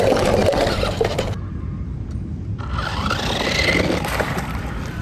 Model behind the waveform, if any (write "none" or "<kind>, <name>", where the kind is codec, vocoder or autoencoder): none